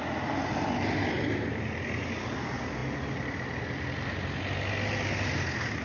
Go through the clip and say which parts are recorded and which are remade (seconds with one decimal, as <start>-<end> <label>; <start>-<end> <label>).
0.0-5.8 recorded